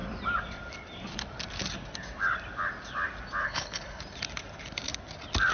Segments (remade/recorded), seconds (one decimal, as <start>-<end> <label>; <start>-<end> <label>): 0.0-3.4 recorded; 3.4-4.0 remade; 4.0-5.5 recorded